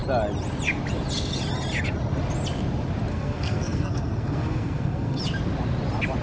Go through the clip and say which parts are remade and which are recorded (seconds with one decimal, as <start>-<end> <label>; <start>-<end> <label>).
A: 0.0-3.1 recorded; 3.1-5.2 remade; 5.2-6.2 recorded